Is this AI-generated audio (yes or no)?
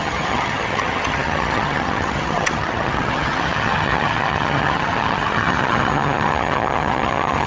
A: yes